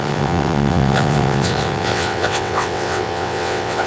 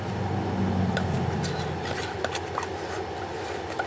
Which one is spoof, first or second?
first